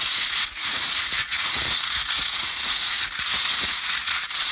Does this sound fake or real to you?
fake